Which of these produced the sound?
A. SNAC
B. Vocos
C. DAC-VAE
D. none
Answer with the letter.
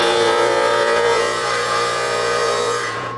B